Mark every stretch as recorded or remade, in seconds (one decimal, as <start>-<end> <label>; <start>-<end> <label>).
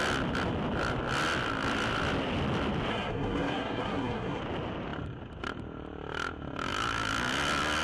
0.0-2.9 recorded; 2.9-4.4 remade; 4.4-7.8 recorded